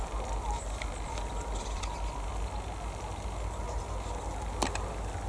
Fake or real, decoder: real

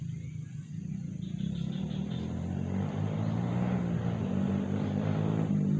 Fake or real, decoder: real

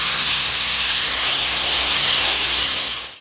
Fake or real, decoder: fake, codec, SNAC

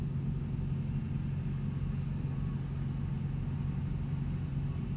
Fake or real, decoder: real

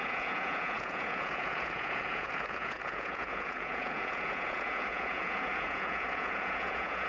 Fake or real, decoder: fake, vocoder, Vocos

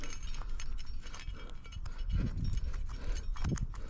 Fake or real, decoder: real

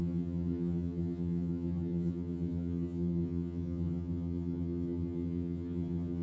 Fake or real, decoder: fake, vocoder, HiFi-GAN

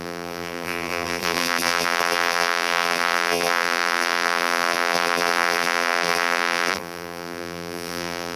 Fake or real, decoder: fake, vocoder, BigVGAN v2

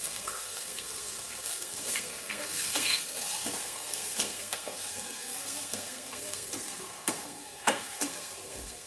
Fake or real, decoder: fake, codec, SNAC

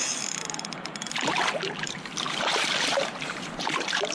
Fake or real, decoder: fake, vocoder, BigVGAN v2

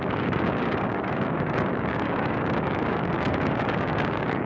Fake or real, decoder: fake, codec, DAC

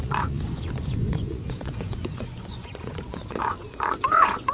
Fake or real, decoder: fake, vocoder, Vocos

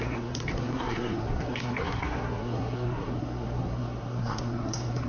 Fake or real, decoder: fake, codec, SNAC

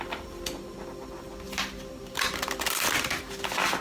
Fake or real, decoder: real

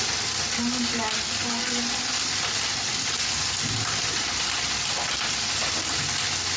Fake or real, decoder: real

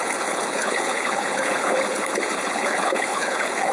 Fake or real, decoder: fake, codec, HILCodec